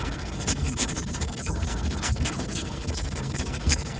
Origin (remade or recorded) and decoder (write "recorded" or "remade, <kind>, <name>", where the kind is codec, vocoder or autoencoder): remade, codec, SNAC